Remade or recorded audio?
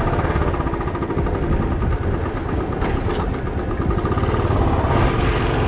recorded